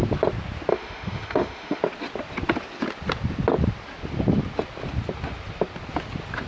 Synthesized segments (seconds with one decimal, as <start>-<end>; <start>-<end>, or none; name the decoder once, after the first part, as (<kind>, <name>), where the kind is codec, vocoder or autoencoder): 0.7-1.8 (autoencoder, DAC-VAE)